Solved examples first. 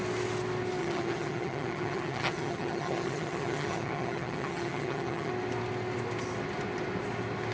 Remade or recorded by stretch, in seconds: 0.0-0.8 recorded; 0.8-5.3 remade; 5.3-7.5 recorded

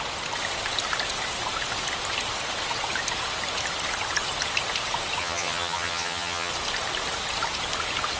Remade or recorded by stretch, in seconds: 0.0-5.2 recorded; 5.2-6.5 remade; 6.5-8.2 recorded